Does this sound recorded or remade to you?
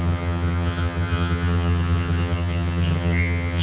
remade